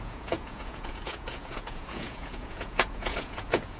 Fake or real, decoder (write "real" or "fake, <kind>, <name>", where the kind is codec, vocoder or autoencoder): fake, vocoder, Vocos